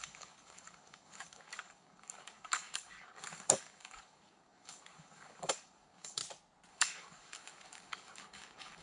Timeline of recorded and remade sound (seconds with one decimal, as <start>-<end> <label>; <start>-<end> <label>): 0.0-6.2 remade; 6.2-6.7 recorded; 6.7-8.8 remade